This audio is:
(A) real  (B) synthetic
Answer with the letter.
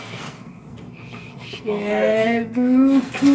B